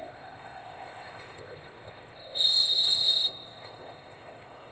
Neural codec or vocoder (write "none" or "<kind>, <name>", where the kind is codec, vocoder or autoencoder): codec, ZipCodec